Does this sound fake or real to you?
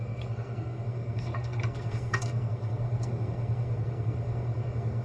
fake